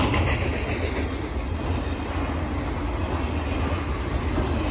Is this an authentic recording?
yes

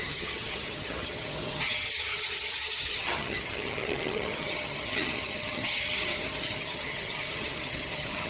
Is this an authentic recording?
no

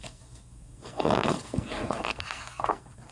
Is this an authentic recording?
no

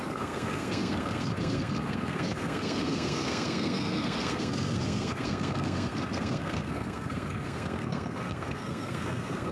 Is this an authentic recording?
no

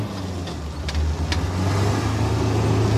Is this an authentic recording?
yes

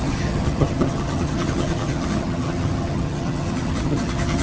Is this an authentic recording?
no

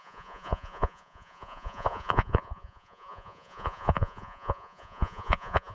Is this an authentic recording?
no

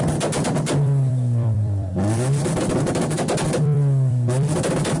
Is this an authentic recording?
no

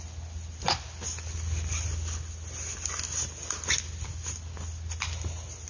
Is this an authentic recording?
yes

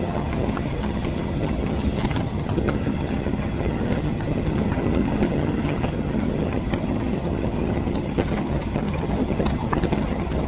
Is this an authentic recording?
no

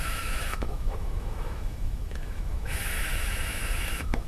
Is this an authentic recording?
no